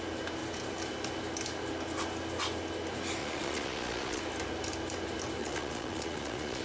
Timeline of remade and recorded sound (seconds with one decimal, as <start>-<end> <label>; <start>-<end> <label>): 0.0-3.2 recorded; 3.2-4.2 remade; 4.2-5.4 recorded; 5.4-6.6 remade